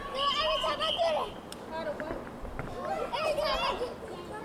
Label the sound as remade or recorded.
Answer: recorded